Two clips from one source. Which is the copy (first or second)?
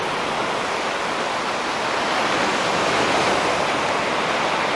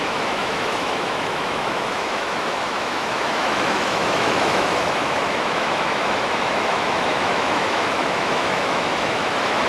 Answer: second